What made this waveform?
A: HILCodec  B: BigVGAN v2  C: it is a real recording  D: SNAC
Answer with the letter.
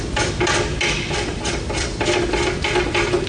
C